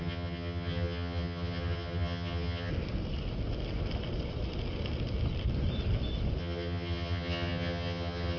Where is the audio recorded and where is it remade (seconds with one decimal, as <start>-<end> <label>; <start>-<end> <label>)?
0.0-2.7 remade; 2.7-6.4 recorded; 6.4-8.4 remade